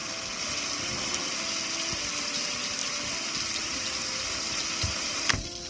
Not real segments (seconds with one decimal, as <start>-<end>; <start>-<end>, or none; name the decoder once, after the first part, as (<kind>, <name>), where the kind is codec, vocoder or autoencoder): none